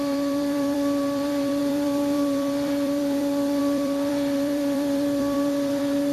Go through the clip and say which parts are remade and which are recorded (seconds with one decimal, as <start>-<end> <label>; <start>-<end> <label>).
0.0-6.1 remade